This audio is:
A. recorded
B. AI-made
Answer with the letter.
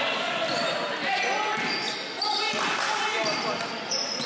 A